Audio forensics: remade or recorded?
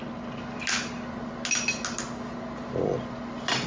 recorded